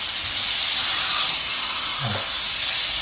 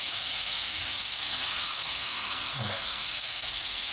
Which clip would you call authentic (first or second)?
first